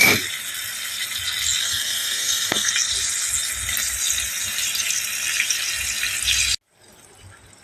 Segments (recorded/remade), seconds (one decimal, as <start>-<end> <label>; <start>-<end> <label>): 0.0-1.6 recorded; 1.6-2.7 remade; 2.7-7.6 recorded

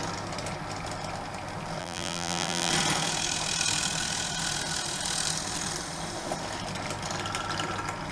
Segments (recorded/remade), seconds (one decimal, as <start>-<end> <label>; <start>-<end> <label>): 0.0-1.8 recorded; 1.8-2.7 remade; 2.7-8.1 recorded

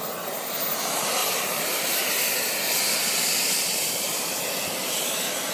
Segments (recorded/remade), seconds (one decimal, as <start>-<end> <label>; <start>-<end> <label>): 0.0-1.2 recorded; 1.2-2.8 remade; 2.8-5.5 recorded

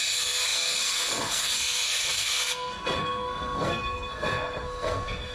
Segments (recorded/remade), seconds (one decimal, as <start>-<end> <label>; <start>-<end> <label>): 0.0-5.3 remade

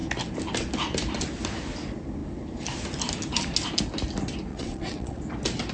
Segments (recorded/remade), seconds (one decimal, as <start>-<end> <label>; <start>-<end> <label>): 0.0-4.5 recorded; 4.5-5.2 remade; 5.2-5.7 recorded

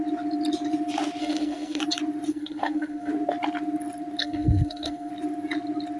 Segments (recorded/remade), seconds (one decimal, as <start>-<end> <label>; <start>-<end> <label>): 0.0-1.2 recorded; 1.2-1.8 remade; 1.8-2.3 recorded; 2.3-3.1 remade; 3.1-4.2 recorded; 4.2-5.1 remade; 5.1-6.0 recorded